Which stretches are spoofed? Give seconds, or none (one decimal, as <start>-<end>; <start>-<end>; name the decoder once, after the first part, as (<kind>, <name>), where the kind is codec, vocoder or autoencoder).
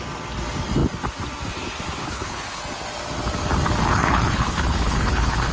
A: 2.0-2.6 (codec, HILCodec); 3.9-5.5